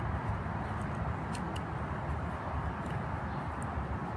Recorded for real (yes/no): yes